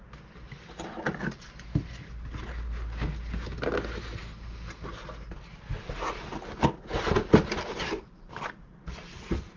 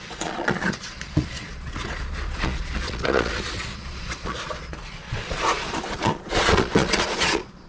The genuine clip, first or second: first